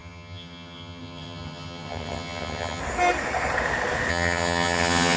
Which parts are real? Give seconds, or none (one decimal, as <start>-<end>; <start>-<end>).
2.8-4.1